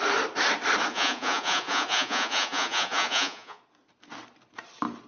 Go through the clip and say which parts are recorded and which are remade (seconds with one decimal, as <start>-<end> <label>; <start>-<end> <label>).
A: 0.0-0.9 recorded; 0.9-3.6 remade; 3.6-5.1 recorded